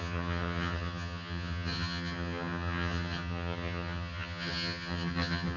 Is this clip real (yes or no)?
no